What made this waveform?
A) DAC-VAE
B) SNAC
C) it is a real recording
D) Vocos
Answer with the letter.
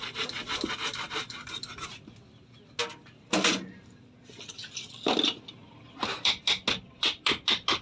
C